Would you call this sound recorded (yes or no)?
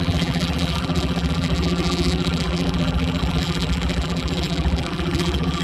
no